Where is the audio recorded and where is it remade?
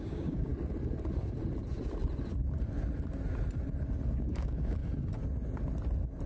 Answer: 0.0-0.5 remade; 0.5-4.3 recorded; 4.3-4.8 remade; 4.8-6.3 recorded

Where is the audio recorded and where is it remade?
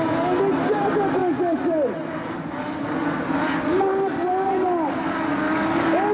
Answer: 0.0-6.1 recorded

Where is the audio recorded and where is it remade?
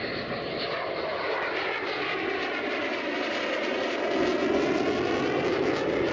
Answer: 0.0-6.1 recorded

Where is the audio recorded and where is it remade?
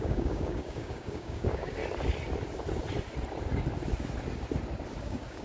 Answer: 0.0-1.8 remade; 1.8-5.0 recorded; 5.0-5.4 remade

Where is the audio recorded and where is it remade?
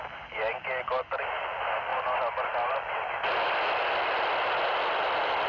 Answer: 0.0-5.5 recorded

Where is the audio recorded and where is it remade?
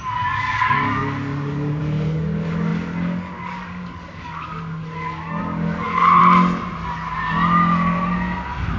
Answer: 0.0-6.2 remade; 6.2-8.8 recorded